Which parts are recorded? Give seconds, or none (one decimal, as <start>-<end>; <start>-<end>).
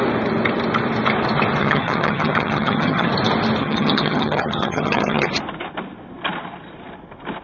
0.0-1.6; 3.1-3.6; 5.3-7.4